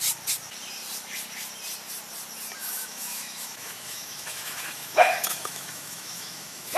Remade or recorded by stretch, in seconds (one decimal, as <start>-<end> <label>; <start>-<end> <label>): 0.0-2.6 recorded; 2.6-6.8 remade